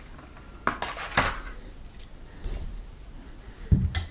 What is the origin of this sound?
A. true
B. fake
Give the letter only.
A